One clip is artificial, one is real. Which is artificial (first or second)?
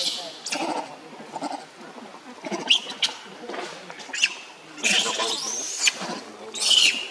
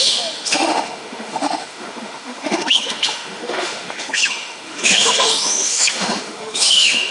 second